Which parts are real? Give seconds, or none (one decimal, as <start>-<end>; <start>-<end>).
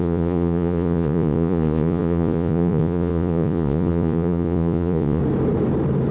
5.2-6.1